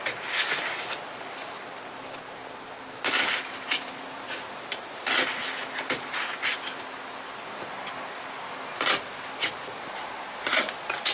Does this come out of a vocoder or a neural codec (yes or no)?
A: no